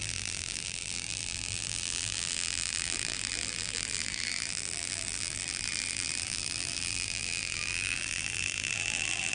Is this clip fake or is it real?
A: fake